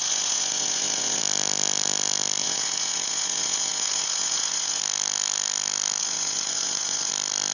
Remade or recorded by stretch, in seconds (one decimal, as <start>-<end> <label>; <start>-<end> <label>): 0.0-1.2 remade; 1.2-2.4 recorded; 2.4-4.8 remade; 4.8-6.0 recorded; 6.0-7.1 remade; 7.1-7.5 recorded